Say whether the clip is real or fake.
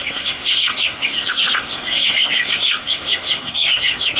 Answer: fake